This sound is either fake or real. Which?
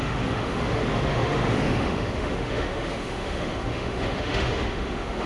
fake